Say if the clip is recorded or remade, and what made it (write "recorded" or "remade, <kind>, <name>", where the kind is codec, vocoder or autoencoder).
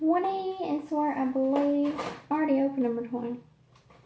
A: recorded